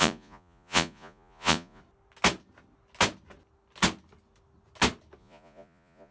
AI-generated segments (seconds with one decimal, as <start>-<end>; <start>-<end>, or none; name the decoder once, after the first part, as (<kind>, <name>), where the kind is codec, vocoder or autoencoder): 0.0-1.8 (vocoder, Vocos); 5.2-6.1